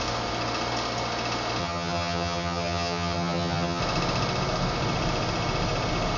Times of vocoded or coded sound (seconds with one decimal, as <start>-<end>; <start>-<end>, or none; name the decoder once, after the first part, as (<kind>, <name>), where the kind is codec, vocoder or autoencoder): 1.6-3.8 (vocoder, HiFi-GAN)

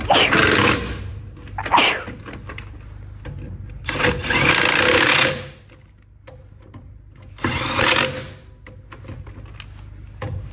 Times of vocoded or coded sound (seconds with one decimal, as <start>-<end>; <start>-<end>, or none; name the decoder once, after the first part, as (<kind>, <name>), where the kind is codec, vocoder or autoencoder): 1.1-2.2 (vocoder, BigVGAN v2)

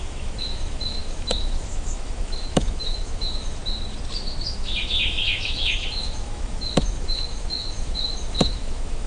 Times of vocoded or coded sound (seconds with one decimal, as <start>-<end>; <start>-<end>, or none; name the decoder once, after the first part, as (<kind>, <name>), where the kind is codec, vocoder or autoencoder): 0.0-3.6 (autoencoder, DAC-VAE); 4.5-9.1

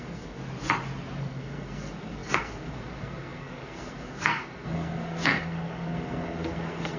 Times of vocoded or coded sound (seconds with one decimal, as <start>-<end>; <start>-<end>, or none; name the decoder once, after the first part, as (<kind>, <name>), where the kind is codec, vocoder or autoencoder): 0.0-0.4 (codec, SNAC); 1.2-7.0

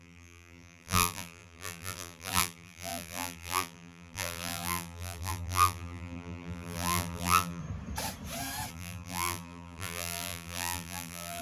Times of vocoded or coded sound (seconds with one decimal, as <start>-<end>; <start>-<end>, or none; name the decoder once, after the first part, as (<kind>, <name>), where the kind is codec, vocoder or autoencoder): 0.0-7.6 (vocoder, BigVGAN v2); 8.7-11.4

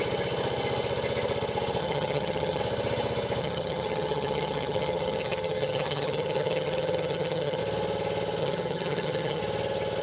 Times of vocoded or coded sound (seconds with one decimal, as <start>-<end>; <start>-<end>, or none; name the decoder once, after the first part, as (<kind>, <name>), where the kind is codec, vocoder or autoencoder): 1.8-2.6 (vocoder, HiFi-GAN); 3.4-7.6; 8.4-9.4

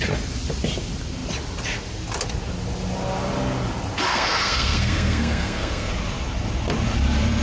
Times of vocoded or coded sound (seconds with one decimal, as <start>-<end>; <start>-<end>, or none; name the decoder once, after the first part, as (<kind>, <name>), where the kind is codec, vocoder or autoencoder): 4.1-5.9 (codec, SNAC)

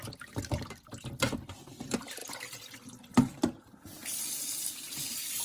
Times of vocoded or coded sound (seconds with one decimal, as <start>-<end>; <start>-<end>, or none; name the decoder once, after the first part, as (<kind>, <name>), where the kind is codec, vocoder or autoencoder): 0.0-4.0 (vocoder, BigVGAN v2); 4.8-5.4